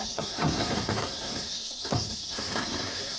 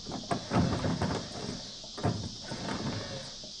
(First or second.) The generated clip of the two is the first